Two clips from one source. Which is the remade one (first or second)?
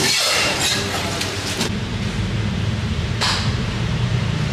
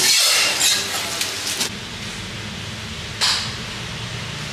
first